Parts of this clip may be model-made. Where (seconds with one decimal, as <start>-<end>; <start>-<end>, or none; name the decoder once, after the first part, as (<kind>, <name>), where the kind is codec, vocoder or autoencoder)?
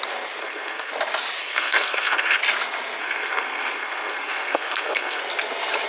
0.4-0.9 (codec, SNAC); 1.4-2.4; 3.0-5.2